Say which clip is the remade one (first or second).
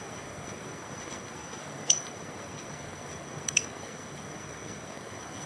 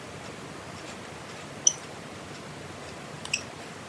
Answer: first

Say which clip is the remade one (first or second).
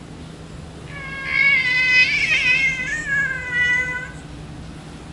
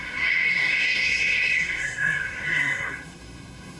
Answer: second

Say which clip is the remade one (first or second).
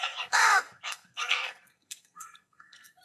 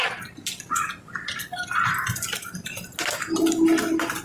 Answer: first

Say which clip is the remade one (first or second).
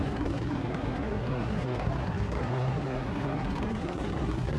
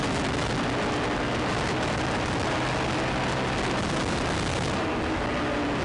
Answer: first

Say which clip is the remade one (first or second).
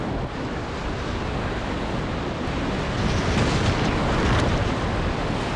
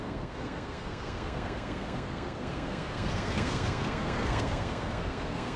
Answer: second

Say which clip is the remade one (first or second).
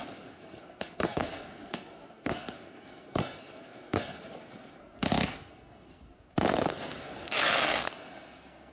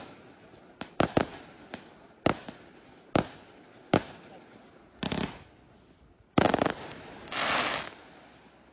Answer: first